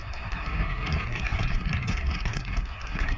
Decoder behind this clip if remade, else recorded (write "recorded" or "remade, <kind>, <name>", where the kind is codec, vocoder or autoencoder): remade, codec, SNAC